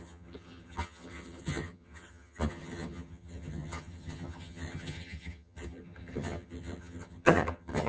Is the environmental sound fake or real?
fake